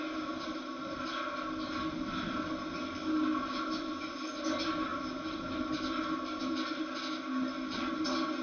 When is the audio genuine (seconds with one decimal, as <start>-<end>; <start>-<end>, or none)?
0.0-8.4